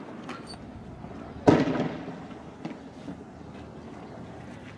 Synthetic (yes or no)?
no